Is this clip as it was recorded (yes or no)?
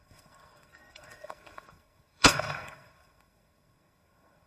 no